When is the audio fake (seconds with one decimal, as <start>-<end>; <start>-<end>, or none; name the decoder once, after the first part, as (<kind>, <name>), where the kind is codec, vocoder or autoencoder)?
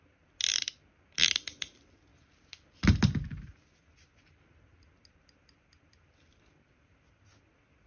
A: none